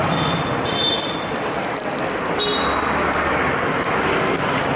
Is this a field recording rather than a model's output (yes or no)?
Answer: yes